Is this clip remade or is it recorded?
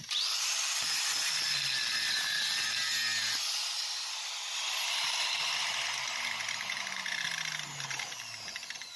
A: recorded